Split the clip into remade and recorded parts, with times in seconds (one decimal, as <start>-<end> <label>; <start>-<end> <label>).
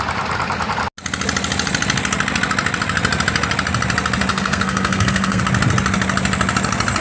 0.0-4.3 recorded; 4.3-5.4 remade; 5.4-7.0 recorded